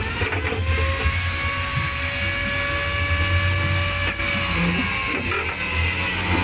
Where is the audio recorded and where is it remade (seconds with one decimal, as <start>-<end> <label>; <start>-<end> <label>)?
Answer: 0.0-6.4 recorded